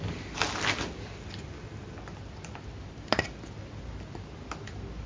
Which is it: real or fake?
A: real